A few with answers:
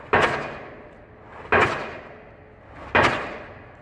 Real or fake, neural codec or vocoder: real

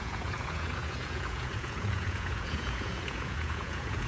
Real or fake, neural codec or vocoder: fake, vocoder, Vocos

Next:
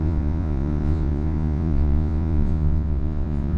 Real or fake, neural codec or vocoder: fake, vocoder, Vocos